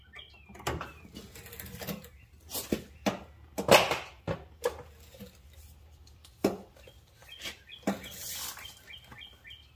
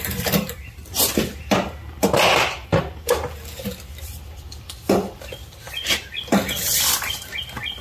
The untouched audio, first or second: first